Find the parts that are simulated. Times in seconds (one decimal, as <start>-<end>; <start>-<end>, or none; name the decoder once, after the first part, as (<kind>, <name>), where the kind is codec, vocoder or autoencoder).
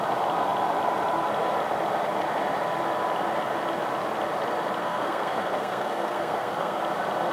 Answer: 4.8-6.8 (codec, SNAC)